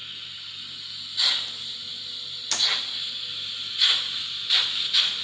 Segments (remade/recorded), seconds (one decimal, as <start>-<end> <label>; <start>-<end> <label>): 0.0-5.2 recorded